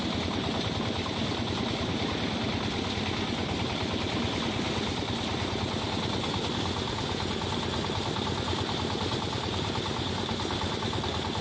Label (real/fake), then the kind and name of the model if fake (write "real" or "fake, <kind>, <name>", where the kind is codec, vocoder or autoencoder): real